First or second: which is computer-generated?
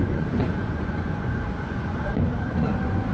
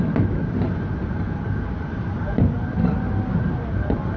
first